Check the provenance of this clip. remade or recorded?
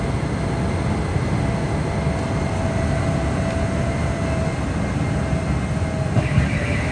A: recorded